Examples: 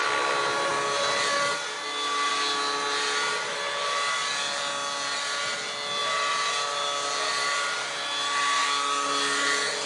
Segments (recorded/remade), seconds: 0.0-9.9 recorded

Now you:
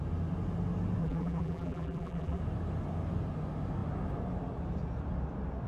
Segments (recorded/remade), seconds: 0.0-1.0 recorded; 1.0-2.4 remade; 2.4-5.7 recorded

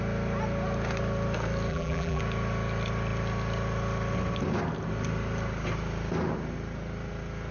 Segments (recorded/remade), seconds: 0.0-1.7 recorded; 1.7-2.2 remade; 2.2-7.5 recorded

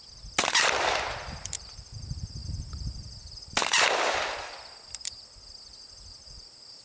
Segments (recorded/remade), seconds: 0.0-0.9 recorded; 0.9-6.8 remade

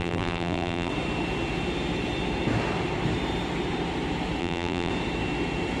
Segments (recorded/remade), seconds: 0.0-0.9 remade; 0.9-4.4 recorded; 4.4-4.9 remade; 4.9-5.8 recorded

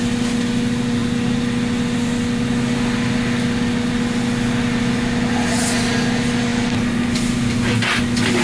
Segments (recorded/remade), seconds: 0.0-8.4 recorded

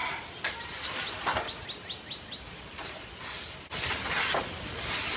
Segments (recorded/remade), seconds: 0.0-3.1 remade; 3.1-5.2 recorded

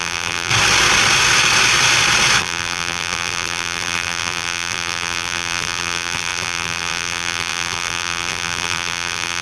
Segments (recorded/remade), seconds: 0.0-0.5 remade; 0.5-2.4 recorded; 2.4-9.4 remade